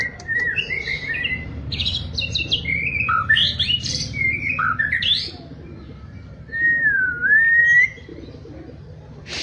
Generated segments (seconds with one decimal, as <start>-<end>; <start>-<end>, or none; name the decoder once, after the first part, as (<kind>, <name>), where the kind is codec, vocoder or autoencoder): 0.0-1.9 (vocoder, BigVGAN v2); 2.9-9.4